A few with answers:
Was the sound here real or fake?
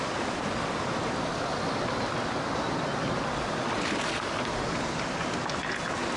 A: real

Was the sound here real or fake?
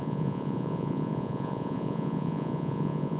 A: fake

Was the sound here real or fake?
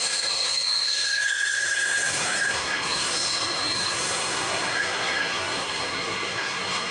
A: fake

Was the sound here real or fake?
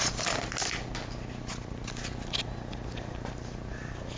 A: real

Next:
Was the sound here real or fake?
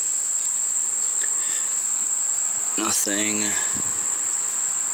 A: real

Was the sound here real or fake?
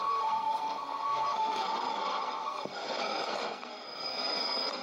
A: fake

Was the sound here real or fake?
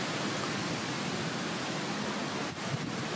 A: real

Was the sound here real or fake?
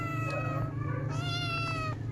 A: real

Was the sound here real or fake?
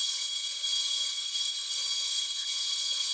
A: fake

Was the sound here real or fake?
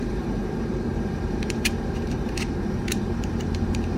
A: fake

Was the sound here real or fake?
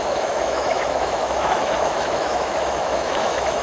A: fake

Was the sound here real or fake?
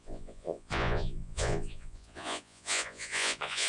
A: fake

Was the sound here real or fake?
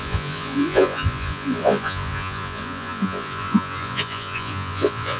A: fake